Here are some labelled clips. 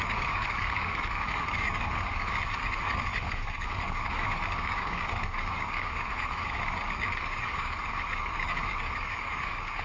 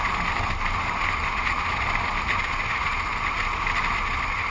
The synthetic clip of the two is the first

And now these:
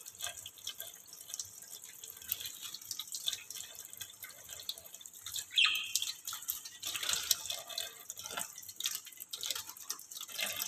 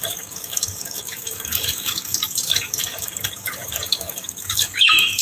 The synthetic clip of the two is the second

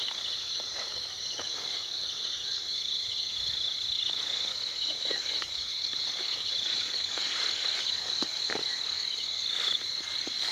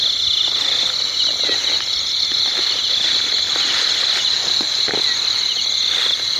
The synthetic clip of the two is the first